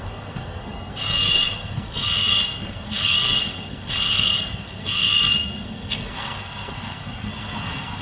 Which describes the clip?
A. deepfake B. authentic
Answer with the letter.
A